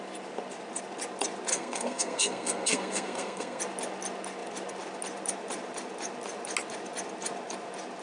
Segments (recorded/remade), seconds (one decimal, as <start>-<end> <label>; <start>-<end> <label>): 0.0-1.5 recorded; 1.5-3.6 remade; 3.6-8.0 recorded